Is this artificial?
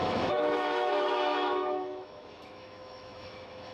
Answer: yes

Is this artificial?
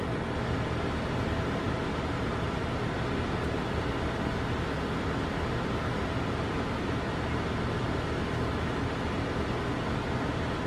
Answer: no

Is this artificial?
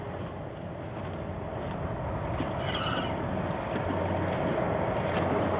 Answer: no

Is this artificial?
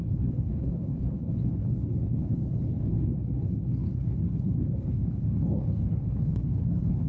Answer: yes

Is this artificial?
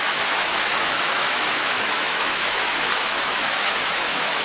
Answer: yes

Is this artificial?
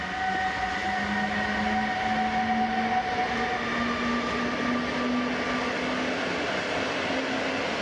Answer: no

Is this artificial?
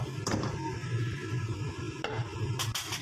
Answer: no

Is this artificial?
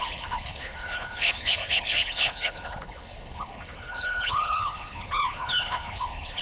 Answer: yes